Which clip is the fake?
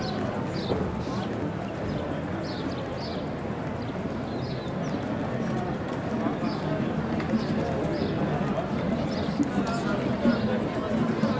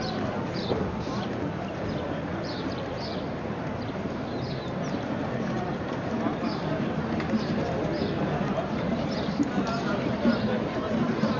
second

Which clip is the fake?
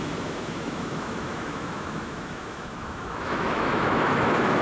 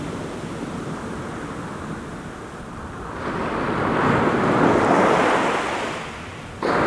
first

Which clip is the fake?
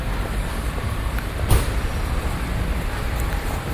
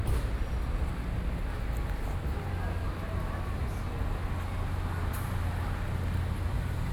first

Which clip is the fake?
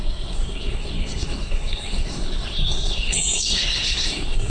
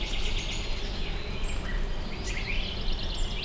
first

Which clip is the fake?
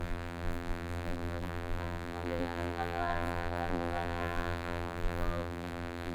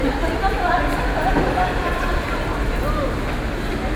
first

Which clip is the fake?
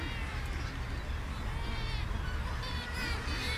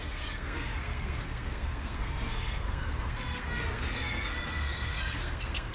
second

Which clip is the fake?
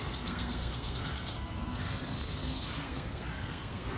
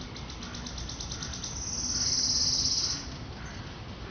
first